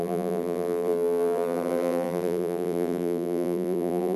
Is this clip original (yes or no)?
no